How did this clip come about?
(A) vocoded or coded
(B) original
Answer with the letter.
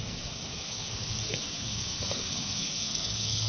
A